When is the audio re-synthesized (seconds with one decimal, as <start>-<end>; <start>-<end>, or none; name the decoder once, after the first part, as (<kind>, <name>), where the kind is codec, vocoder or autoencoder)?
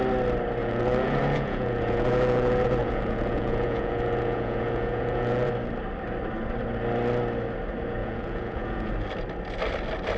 0.6-5.5 (vocoder, Vocos); 8.0-8.9